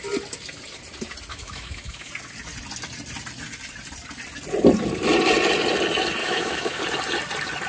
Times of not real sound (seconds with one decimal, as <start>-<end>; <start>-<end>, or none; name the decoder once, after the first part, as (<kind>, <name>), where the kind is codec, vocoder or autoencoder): 1.3-2.1 (autoencoder, DAC-VAE); 6.2-6.8